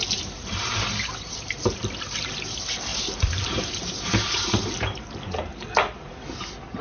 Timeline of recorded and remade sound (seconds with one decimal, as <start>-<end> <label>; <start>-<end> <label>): 0.0-0.8 remade; 0.8-2.9 recorded; 2.9-4.4 remade; 4.4-6.8 recorded